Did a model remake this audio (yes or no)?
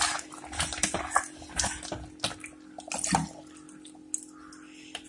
no